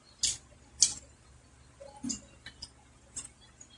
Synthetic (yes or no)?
no